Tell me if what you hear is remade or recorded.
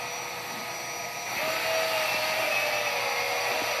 recorded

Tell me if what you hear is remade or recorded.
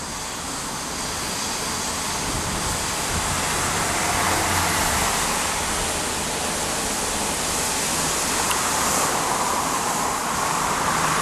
recorded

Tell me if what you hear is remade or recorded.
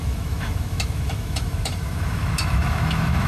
remade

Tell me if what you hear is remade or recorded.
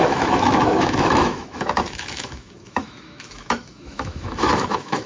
remade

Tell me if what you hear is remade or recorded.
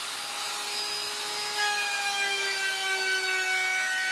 remade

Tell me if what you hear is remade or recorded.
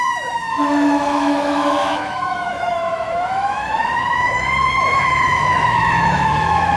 remade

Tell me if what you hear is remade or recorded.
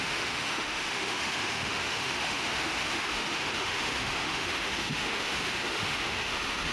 remade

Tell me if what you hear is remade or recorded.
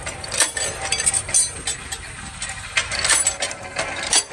recorded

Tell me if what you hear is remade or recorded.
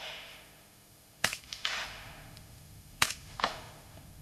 remade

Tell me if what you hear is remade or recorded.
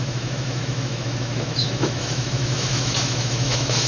remade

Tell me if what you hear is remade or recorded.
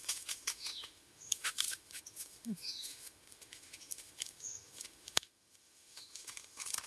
remade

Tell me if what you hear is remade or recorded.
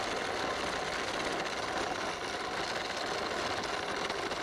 recorded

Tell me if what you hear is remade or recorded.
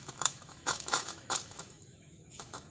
remade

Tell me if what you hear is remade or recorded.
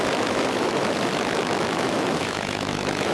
remade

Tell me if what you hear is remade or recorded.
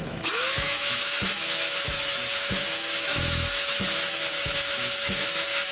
remade